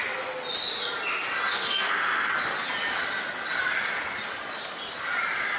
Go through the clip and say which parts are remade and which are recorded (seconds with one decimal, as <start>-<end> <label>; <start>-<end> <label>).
0.0-1.5 recorded; 1.5-2.3 remade; 2.3-5.6 recorded